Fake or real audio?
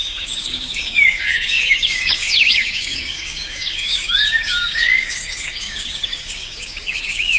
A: fake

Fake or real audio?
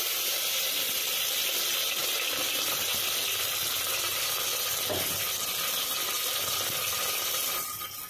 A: real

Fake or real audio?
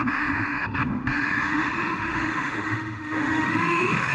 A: fake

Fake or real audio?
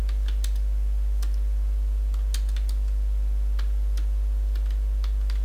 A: real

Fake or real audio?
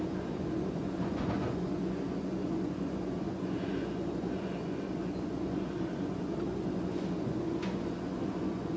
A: fake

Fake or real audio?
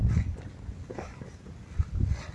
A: real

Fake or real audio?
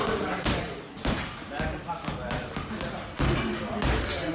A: real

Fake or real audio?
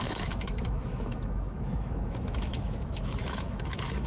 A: fake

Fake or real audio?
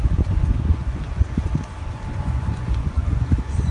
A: fake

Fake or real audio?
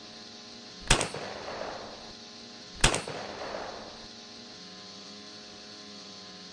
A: real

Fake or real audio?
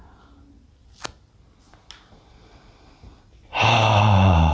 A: real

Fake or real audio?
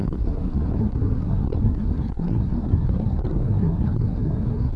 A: fake